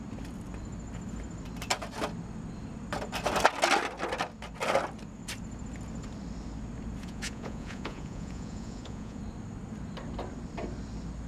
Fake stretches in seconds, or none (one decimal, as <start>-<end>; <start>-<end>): 7.0-9.2